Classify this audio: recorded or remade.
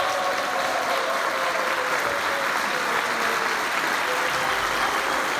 recorded